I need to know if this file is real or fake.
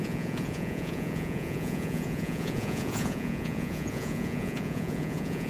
fake